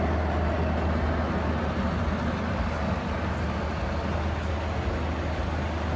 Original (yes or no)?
yes